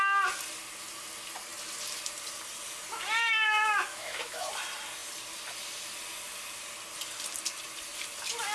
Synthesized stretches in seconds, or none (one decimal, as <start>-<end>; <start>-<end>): 3.9-4.5